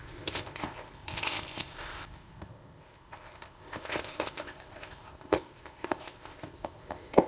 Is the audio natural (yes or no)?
no